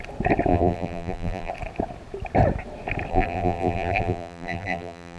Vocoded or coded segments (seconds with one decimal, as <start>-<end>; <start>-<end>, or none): 0.5-1.5; 3.1-5.2

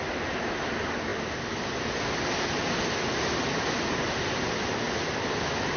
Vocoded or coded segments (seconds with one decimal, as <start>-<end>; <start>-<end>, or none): none